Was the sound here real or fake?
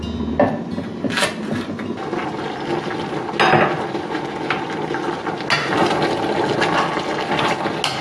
real